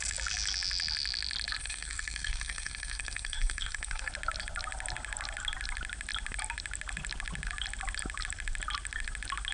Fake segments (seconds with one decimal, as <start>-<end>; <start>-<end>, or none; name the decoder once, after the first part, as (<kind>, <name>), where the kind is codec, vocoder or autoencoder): 1.6-4.1 (codec, SNAC)